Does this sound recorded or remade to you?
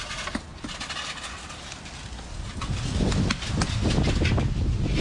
recorded